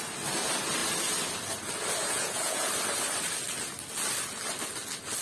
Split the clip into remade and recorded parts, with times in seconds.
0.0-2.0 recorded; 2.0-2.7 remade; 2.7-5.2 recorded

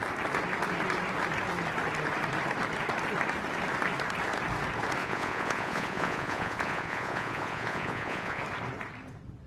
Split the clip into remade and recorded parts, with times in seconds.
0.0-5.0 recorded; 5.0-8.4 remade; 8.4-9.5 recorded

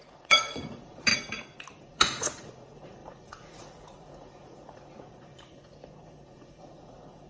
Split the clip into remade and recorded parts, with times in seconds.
0.0-1.1 remade; 1.1-1.8 recorded; 1.8-7.3 remade

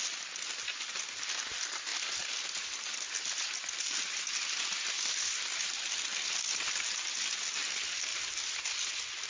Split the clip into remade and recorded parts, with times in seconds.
0.0-9.3 recorded

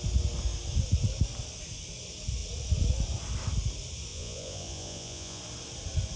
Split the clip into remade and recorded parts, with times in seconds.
0.0-4.1 recorded; 4.1-5.4 remade; 5.4-6.2 recorded

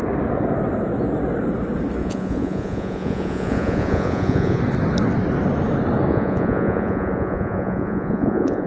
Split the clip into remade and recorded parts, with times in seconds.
0.0-2.0 recorded; 2.0-4.6 remade; 4.6-6.1 recorded; 6.1-8.7 remade

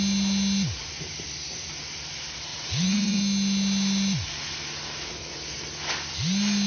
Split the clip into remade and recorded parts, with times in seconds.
0.0-2.5 recorded; 2.5-3.2 remade; 3.2-6.7 recorded

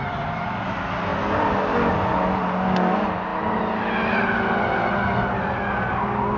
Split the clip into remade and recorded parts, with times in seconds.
0.0-6.4 recorded